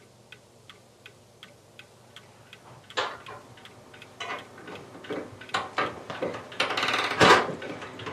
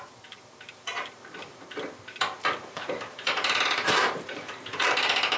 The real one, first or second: first